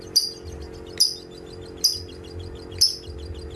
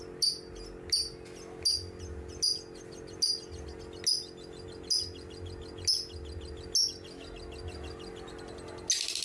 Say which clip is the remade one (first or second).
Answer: first